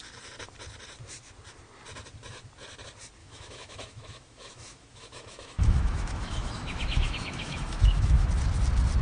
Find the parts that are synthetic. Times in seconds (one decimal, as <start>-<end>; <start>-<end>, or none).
3.2-8.3